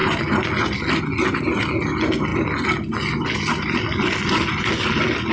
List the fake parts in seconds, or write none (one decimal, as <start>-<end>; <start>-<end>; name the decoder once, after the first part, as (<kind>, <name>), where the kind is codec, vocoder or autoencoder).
none